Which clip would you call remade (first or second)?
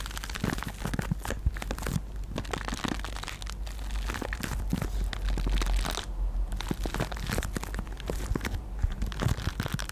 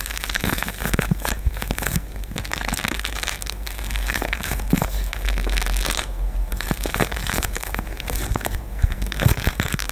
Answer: second